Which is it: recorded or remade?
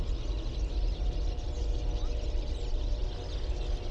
recorded